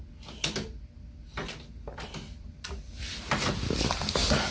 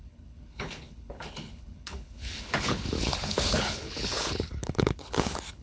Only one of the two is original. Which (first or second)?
first